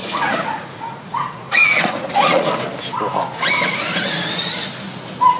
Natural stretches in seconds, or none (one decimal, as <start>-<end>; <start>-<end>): 2.5-5.4